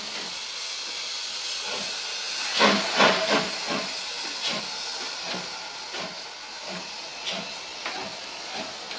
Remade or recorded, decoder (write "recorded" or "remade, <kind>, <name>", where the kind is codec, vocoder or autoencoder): recorded